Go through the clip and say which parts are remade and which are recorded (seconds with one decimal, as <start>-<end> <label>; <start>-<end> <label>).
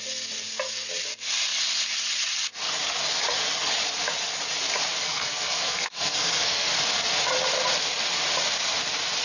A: 0.0-4.9 recorded; 4.9-6.7 remade; 6.7-9.2 recorded